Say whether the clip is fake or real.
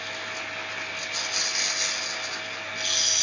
real